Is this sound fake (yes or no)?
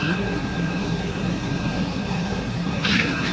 yes